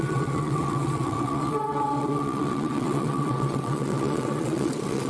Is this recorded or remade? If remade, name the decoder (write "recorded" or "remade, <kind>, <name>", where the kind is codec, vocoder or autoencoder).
remade, vocoder, WaveNeXt